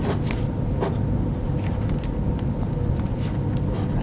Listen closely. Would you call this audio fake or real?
real